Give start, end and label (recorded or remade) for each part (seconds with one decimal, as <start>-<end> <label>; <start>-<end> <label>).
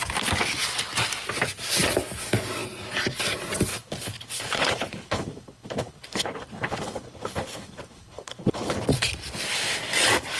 0.0-3.7 recorded; 3.7-8.8 remade; 8.8-10.4 recorded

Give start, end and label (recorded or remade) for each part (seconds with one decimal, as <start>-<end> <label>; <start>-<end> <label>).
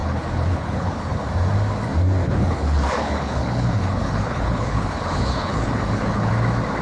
0.0-1.2 remade; 1.2-2.2 recorded; 2.2-6.3 remade; 6.3-6.8 recorded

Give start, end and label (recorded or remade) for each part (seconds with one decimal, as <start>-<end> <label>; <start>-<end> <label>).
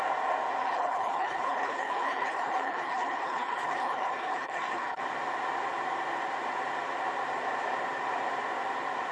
0.0-0.6 recorded; 0.6-5.0 remade; 5.0-9.1 recorded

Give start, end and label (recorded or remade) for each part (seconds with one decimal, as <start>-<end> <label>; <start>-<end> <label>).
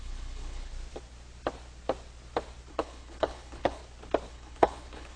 0.0-0.7 remade; 0.7-2.7 recorded; 2.7-3.8 remade; 3.8-4.3 recorded; 4.3-5.2 remade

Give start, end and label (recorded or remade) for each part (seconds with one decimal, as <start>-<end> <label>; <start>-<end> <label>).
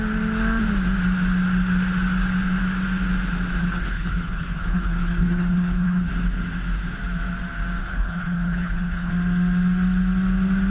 0.0-3.6 recorded; 3.6-6.1 remade; 6.1-7.8 recorded; 7.8-9.1 remade; 9.1-10.7 recorded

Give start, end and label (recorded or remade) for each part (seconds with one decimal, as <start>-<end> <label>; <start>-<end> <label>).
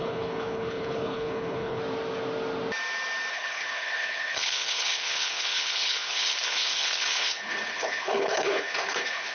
0.0-1.8 remade; 1.8-3.3 recorded; 3.3-9.3 remade